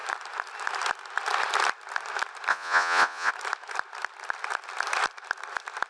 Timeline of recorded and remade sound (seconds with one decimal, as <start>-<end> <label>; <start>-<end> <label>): 0.0-2.5 recorded; 2.5-3.3 remade; 3.3-5.9 recorded